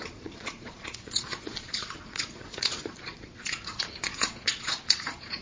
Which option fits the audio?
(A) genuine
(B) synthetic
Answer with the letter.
B